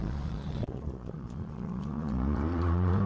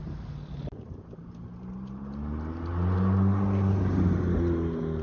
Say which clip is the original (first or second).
second